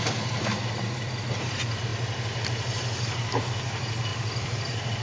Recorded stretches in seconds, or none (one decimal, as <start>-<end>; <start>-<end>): 0.0-4.1